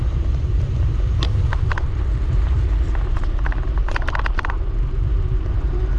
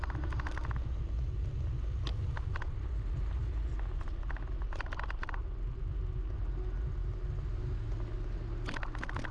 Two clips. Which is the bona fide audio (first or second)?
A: second